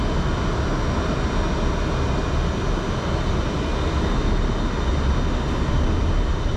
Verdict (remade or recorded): recorded